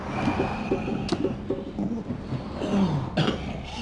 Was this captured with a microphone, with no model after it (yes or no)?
yes